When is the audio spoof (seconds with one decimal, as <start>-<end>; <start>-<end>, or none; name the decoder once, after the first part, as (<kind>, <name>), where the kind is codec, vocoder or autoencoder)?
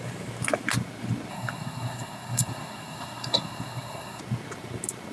1.3-4.2 (codec, SNAC)